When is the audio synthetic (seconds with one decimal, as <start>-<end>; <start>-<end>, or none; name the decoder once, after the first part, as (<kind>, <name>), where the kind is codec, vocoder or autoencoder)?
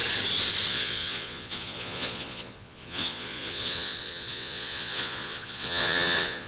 0.7-6.5 (vocoder, Vocos)